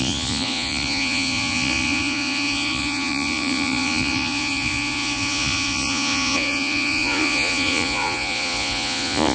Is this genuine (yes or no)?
no